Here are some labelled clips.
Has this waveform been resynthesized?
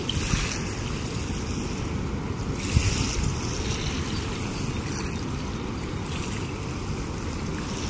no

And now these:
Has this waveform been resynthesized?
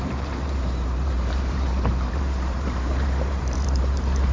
yes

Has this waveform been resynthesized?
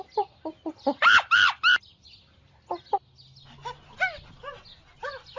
no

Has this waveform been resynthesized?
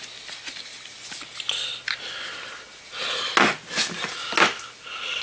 no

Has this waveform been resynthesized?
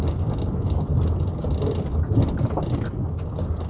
no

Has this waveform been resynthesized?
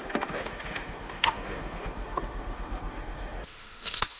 yes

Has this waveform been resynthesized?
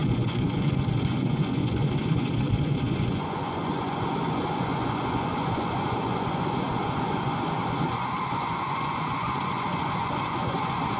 yes